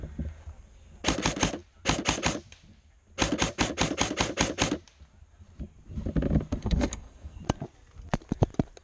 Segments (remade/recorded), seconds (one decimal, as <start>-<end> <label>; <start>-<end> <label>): 0.0-6.6 recorded; 6.6-7.4 remade; 7.4-8.8 recorded